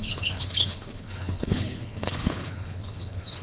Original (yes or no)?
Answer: no